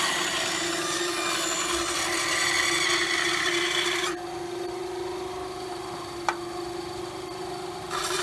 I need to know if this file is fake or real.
real